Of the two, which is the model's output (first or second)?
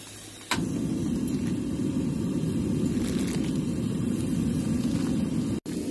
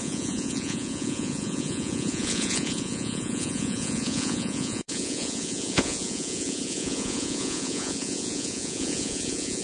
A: second